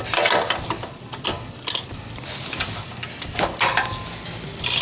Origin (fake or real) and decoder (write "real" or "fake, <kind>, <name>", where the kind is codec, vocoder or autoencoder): real